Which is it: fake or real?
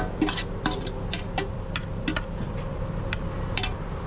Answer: real